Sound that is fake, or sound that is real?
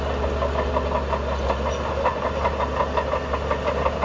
real